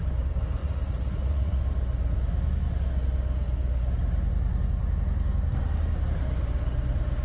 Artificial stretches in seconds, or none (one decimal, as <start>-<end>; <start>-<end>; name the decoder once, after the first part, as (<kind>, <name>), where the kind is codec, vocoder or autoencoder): 0.6-1.6 (vocoder, Vocos)